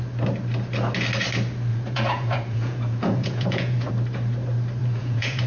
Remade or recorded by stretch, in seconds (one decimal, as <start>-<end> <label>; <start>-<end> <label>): 0.0-1.7 recorded; 1.7-3.9 remade; 3.9-4.8 recorded; 4.8-5.5 remade